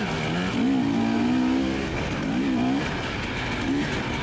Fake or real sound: real